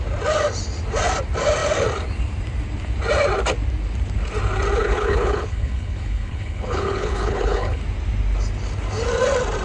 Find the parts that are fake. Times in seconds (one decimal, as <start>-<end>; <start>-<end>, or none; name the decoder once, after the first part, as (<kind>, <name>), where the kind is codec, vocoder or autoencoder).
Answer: 4.8-7.8 (codec, HILCodec)